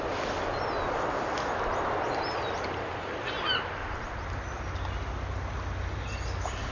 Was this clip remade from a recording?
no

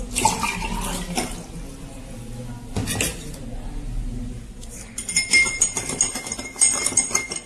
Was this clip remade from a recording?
no